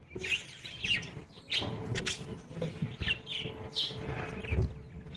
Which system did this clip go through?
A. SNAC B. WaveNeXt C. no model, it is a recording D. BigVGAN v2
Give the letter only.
C